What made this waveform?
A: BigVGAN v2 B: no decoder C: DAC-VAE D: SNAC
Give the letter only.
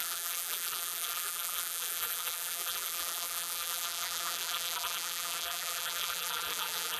A